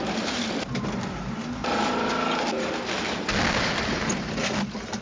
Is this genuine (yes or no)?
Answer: yes